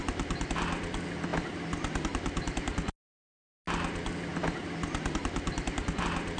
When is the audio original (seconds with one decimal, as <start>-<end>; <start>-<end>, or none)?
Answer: 0.0-6.4